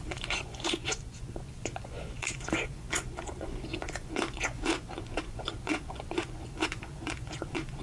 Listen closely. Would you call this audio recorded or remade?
remade